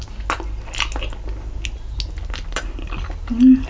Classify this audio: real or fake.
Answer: real